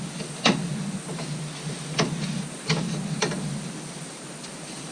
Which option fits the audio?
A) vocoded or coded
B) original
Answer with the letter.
B